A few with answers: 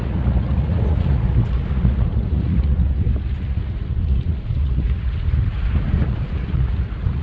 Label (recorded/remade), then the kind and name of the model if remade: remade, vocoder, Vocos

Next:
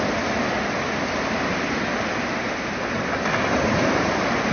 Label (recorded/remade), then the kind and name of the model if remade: recorded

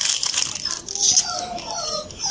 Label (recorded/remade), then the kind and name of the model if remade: recorded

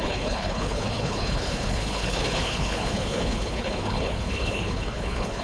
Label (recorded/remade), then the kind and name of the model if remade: remade, codec, HILCodec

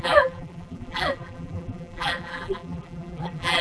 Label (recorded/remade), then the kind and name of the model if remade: remade, vocoder, BigVGAN v2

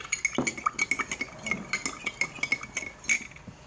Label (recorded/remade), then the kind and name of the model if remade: recorded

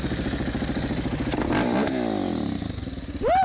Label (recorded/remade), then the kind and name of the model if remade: recorded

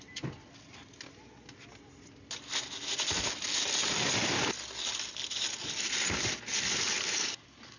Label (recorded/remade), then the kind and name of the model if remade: recorded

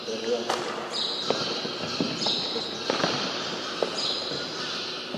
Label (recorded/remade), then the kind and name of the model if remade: recorded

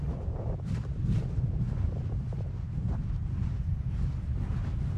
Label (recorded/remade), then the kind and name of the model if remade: recorded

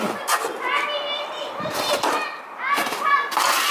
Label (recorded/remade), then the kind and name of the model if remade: recorded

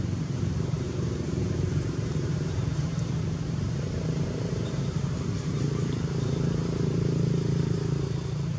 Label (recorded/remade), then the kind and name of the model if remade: remade, vocoder, BigVGAN v2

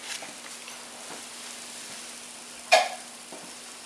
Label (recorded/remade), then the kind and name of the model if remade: recorded